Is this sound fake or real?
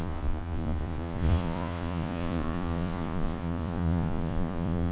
fake